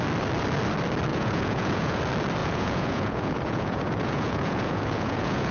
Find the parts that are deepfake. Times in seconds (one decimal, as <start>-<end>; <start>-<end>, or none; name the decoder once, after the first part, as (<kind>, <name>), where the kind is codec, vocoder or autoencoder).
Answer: 1.1-2.0 (vocoder, Vocos); 2.4-5.5